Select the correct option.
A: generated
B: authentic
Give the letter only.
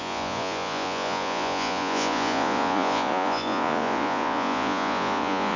A